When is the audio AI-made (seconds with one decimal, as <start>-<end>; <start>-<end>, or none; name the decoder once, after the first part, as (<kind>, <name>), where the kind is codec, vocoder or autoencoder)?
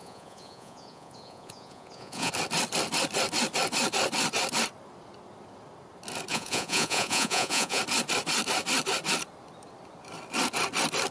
0.0-2.3 (vocoder, Vocos); 6.3-7.8